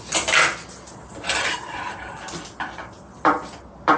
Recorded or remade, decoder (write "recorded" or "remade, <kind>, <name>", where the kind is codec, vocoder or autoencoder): recorded